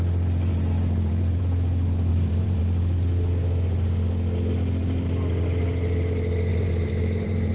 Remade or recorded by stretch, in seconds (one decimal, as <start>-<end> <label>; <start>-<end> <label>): 0.0-0.5 recorded; 0.5-1.4 remade; 1.4-2.1 recorded; 2.1-2.6 remade; 2.6-6.5 recorded; 6.5-7.5 remade